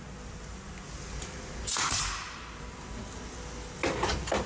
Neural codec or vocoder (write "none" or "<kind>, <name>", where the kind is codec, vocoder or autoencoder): none